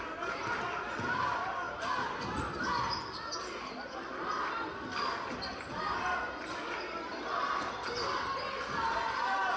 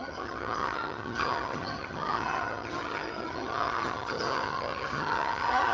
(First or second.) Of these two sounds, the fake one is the second